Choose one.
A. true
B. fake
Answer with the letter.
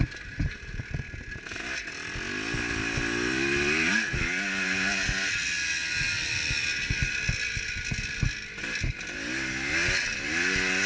A